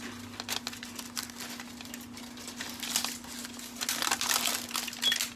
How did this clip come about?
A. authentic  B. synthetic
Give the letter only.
A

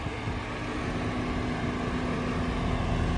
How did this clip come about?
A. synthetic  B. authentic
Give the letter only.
B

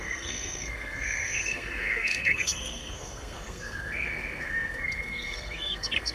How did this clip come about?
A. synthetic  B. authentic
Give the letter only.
A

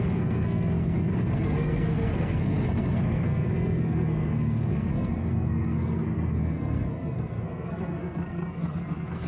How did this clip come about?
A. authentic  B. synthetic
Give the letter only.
B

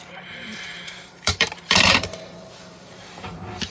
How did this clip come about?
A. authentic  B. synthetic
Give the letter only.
B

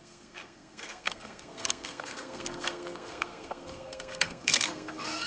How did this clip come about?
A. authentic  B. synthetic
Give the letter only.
B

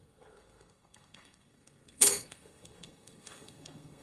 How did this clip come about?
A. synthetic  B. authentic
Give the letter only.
A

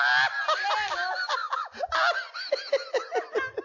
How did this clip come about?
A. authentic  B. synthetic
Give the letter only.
A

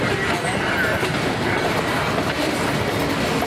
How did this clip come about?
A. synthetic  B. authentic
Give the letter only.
B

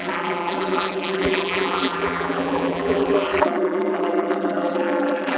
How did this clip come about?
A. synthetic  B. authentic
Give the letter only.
A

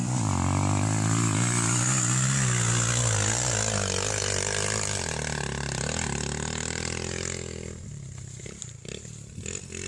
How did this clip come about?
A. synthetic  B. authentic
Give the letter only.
B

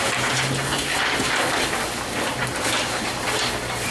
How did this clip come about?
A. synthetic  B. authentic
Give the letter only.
B